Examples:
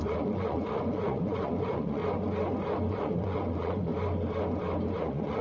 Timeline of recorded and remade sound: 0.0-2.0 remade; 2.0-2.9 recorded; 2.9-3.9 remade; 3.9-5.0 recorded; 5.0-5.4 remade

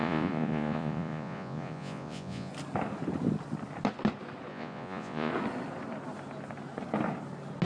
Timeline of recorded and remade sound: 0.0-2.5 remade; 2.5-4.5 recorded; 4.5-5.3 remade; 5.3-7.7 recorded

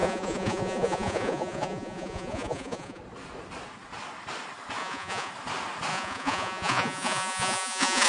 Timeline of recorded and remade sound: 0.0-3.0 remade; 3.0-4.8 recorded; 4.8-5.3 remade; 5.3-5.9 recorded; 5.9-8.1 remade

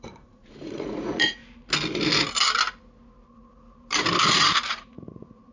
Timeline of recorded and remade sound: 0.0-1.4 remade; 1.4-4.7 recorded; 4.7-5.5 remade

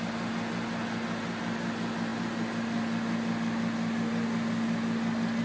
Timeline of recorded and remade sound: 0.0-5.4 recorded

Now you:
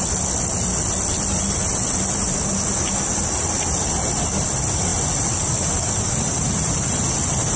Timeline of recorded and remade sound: 0.0-7.6 recorded